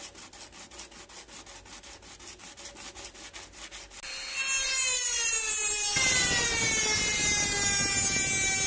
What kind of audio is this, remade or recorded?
recorded